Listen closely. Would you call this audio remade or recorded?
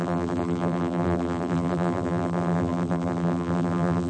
remade